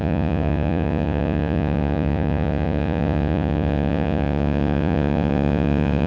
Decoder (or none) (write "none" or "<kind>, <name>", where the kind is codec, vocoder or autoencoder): vocoder, Vocos